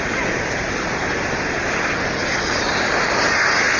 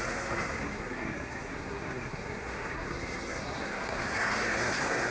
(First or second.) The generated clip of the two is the second